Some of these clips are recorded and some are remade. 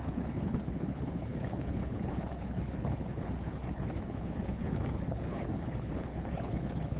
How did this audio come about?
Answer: remade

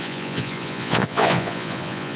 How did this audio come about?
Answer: remade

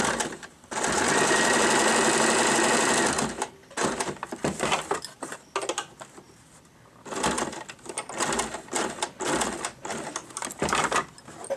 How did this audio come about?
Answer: recorded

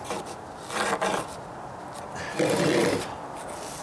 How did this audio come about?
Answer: recorded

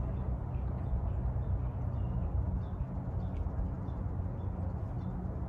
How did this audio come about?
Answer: recorded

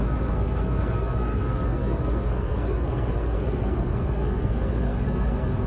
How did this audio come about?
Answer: remade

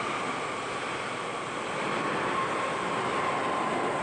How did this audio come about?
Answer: recorded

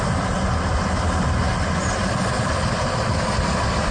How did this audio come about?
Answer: recorded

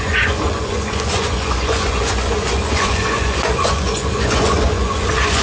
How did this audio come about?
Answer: remade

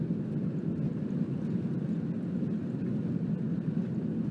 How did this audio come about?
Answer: recorded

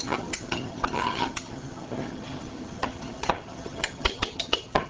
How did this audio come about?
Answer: remade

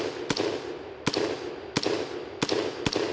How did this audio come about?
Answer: recorded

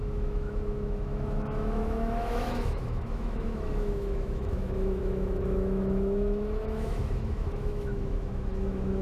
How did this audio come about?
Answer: remade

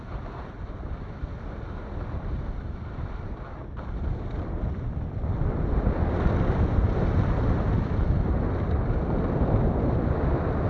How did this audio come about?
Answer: recorded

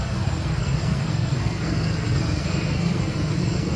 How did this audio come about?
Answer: remade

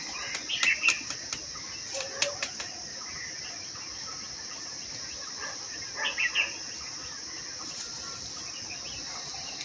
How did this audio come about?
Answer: recorded